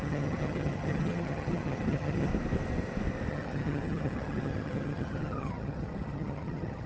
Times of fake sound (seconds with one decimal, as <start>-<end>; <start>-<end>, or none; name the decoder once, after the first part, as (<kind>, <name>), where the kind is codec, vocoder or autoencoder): 0.0-2.3 (vocoder, HiFi-GAN); 3.3-6.9